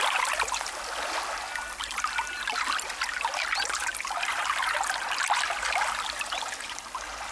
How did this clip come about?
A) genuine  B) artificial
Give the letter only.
A